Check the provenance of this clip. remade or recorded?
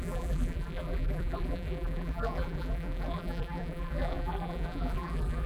remade